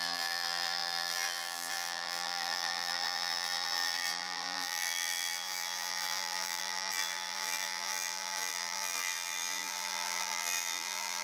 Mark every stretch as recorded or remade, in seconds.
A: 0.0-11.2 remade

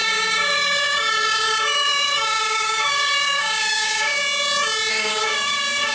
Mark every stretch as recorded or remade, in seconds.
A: 0.0-4.2 remade; 4.2-4.9 recorded; 4.9-5.9 remade